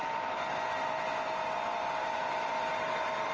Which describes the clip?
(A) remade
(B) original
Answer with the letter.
B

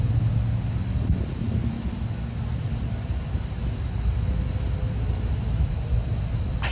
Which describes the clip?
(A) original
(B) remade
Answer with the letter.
A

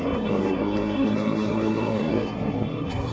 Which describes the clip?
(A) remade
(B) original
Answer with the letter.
A